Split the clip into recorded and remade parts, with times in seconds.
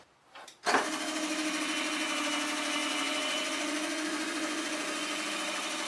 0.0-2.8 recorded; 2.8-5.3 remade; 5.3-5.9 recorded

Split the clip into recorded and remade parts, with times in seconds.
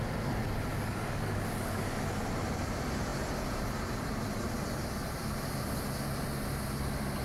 0.0-0.7 recorded; 0.7-2.1 remade; 2.1-7.2 recorded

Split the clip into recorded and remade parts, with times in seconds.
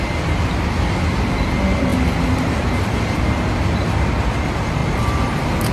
0.0-1.9 recorded; 1.9-3.2 remade; 3.2-4.8 recorded; 4.8-5.7 remade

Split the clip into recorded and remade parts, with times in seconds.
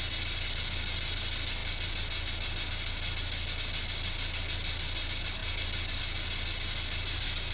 0.0-7.5 recorded